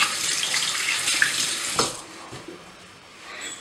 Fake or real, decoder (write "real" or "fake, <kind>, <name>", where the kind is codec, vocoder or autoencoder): fake, vocoder, BigVGAN v2